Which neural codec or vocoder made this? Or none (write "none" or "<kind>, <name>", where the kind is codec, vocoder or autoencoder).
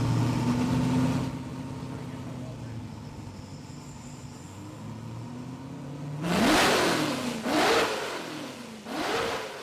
none